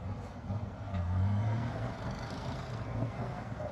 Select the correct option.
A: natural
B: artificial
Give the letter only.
B